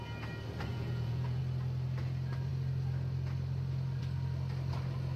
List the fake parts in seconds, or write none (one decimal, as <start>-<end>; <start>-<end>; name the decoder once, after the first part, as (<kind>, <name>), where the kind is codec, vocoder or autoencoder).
0.7-1.4 (vocoder, Vocos)